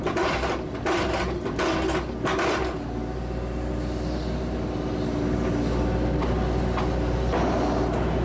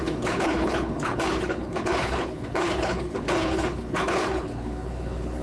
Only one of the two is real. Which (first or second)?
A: first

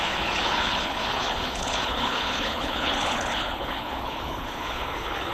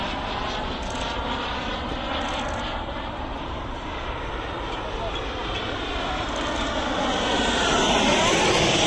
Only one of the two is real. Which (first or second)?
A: second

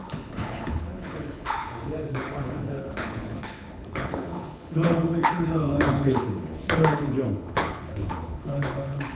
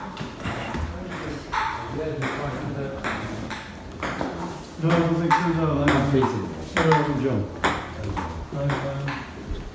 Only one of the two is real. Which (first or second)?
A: second